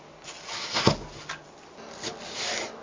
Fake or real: real